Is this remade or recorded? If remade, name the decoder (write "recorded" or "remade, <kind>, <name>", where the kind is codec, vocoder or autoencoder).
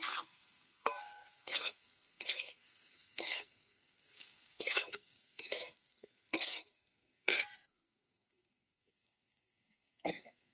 remade, codec, SNAC